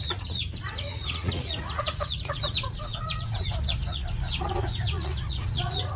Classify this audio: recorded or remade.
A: remade